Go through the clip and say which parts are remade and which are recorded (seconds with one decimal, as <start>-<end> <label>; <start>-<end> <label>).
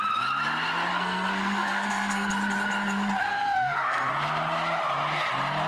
0.0-0.9 recorded; 0.9-2.3 remade; 2.3-3.3 recorded; 3.3-4.1 remade; 4.1-5.7 recorded